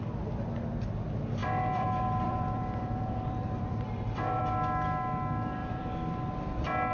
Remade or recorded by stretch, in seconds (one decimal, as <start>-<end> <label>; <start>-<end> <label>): 0.0-1.4 recorded; 1.4-4.4 remade; 4.4-5.6 recorded; 5.6-6.3 remade; 6.3-6.9 recorded